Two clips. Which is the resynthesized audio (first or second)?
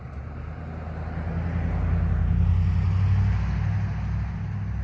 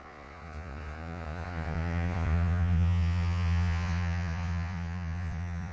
second